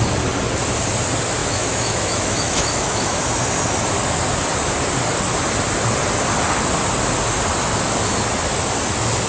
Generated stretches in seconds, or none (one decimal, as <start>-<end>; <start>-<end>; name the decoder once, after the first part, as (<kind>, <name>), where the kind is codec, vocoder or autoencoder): 1.4-3.2 (autoencoder, DAC-VAE)